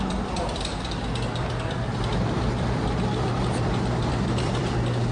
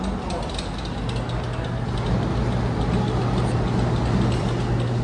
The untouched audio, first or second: second